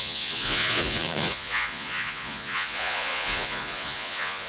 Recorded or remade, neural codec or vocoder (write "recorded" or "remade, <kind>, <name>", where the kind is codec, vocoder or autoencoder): remade, vocoder, Vocos